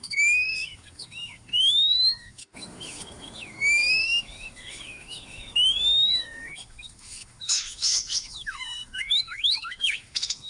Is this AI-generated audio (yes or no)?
yes